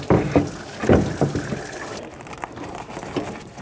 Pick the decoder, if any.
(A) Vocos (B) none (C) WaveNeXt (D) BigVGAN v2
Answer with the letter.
B